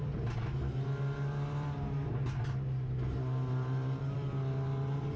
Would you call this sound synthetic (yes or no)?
no